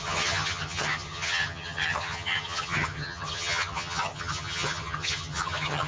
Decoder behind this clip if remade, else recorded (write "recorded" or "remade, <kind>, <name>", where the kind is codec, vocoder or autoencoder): remade, vocoder, HiFi-GAN